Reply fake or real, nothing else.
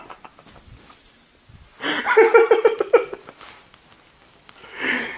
real